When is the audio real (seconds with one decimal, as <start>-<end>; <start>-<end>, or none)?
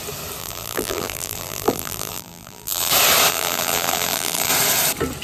0.0-0.4; 2.9-3.3; 4.5-5.2